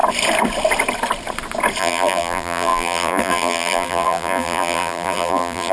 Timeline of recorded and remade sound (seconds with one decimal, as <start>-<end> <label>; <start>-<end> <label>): 0.0-1.8 recorded; 1.8-5.7 remade